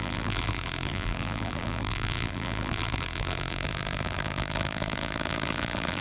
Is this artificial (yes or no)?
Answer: yes